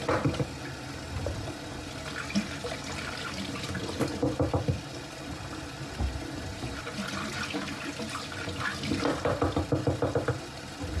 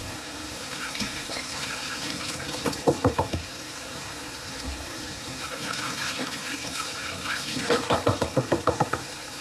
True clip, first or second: first